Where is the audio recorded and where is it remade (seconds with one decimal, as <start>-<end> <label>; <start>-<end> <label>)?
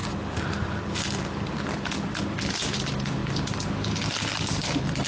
0.0-5.1 recorded